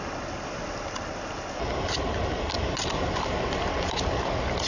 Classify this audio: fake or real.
real